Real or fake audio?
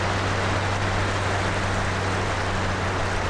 real